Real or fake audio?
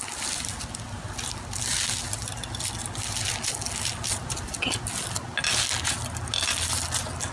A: real